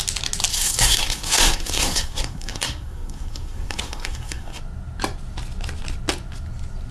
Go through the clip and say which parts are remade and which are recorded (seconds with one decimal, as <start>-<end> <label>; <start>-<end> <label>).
0.0-0.5 recorded; 0.5-4.6 remade; 4.6-6.9 recorded